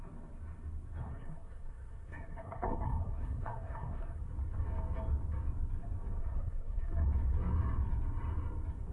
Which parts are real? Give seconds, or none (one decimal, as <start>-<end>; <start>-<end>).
0.0-1.0; 4.2-6.2; 7.1-8.9